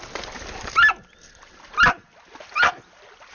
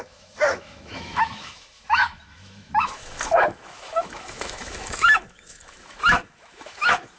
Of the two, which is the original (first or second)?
first